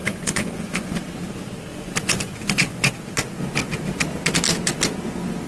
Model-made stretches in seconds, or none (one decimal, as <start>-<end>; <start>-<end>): 0.0-1.0; 1.7-2.9